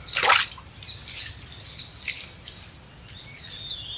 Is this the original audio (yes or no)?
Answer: yes